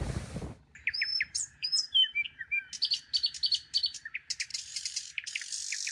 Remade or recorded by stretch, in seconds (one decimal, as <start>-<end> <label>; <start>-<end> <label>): 0.0-1.1 recorded; 1.1-2.4 remade; 2.4-4.5 recorded; 4.5-5.3 remade; 5.3-5.9 recorded